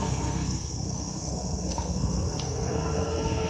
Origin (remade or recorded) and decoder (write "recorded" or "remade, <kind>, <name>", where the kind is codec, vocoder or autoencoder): remade, codec, SNAC